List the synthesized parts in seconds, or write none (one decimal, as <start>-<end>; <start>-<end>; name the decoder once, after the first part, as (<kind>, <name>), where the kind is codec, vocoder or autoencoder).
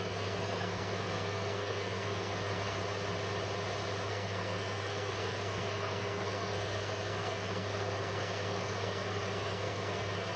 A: 0.0-2.8 (codec, SNAC); 4.1-10.4